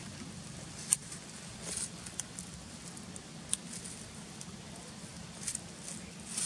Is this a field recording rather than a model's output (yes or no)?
yes